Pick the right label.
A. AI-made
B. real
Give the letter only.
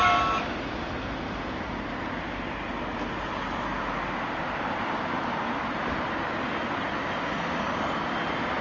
B